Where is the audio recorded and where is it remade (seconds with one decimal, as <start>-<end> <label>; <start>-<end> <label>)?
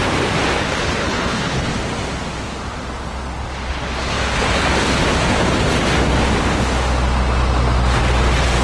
0.0-1.0 recorded; 1.0-1.7 remade; 1.7-8.6 recorded